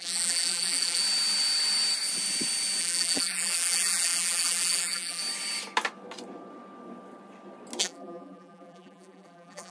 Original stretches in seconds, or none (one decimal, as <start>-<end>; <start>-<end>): 1.0-2.8; 5.2-7.8